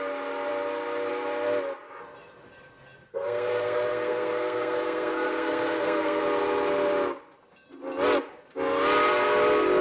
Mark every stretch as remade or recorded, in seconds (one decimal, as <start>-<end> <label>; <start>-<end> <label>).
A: 0.0-3.1 recorded; 3.1-6.2 remade; 6.2-9.8 recorded